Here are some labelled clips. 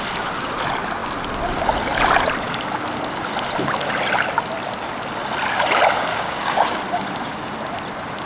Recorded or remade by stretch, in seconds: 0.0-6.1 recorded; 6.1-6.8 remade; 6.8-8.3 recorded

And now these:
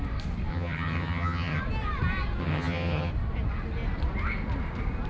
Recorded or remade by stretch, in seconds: 0.0-0.5 recorded; 0.5-1.6 remade; 1.6-2.4 recorded; 2.4-3.1 remade; 3.1-5.1 recorded

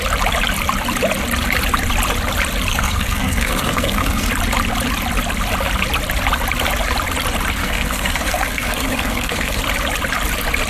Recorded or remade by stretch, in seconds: 0.0-2.7 recorded; 2.7-4.3 remade; 4.3-7.6 recorded; 7.6-9.6 remade; 9.6-10.7 recorded

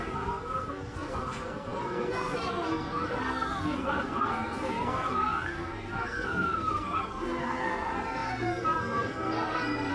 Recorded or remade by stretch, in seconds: 0.0-9.9 remade

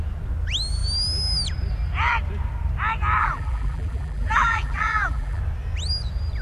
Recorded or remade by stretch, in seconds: 0.0-3.2 recorded; 3.2-5.4 remade; 5.4-6.4 recorded

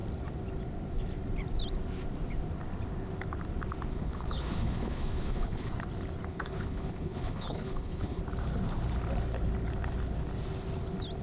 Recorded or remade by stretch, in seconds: 0.0-3.9 recorded; 3.9-5.7 remade; 5.7-6.3 recorded; 6.3-8.2 remade; 8.2-11.2 recorded